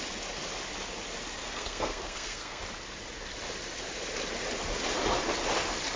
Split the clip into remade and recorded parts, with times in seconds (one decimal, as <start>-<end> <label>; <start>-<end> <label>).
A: 0.0-1.4 recorded; 1.4-2.6 remade; 2.6-6.0 recorded